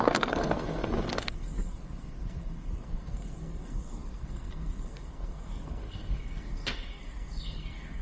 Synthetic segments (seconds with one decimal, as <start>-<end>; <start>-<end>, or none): 0.0-8.0